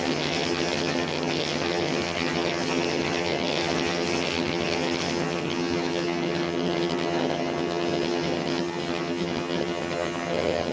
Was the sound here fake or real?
fake